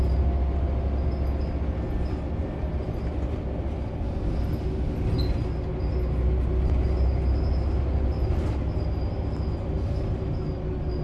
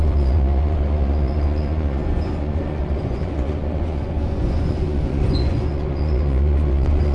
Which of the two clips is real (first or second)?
first